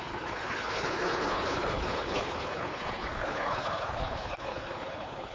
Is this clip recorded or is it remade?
remade